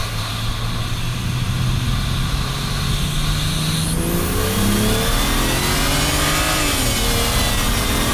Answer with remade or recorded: recorded